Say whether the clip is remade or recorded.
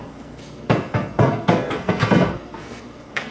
remade